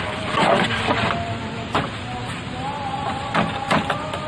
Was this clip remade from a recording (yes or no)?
no